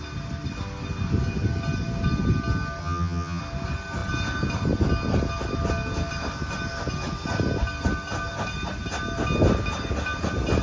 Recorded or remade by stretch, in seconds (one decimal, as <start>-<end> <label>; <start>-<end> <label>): 0.0-2.8 recorded; 2.8-3.4 remade; 3.4-10.6 recorded